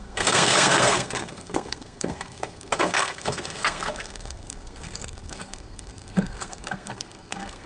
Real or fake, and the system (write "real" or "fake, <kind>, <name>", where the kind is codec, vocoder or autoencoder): fake, codec, SNAC